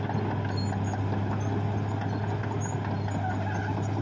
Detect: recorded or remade recorded